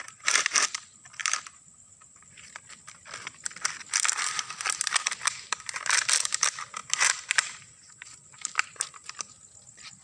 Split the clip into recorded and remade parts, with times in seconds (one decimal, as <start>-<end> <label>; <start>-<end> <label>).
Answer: 0.0-10.0 recorded